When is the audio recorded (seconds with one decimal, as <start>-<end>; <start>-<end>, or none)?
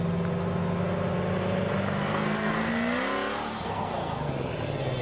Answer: 0.0-2.1; 2.7-3.5; 4.3-5.0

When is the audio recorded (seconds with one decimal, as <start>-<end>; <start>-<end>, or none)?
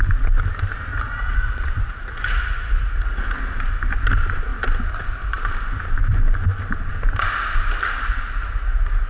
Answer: 0.0-0.9; 3.2-9.1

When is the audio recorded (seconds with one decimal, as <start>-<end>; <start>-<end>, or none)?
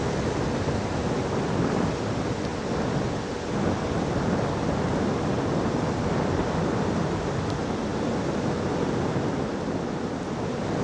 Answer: 0.0-10.8